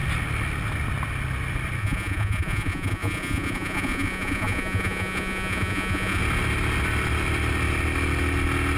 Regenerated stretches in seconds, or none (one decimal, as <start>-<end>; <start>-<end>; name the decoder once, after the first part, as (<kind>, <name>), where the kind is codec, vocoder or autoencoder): 1.8-6.2 (vocoder, Vocos)